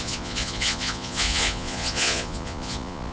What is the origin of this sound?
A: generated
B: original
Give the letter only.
A